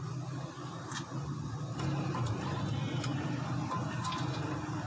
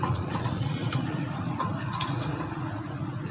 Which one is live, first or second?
first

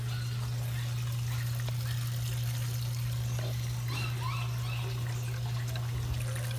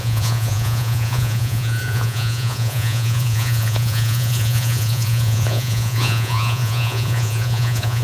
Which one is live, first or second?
first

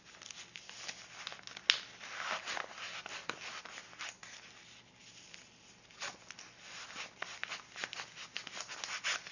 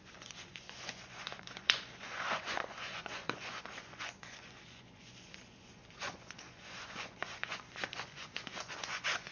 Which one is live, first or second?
first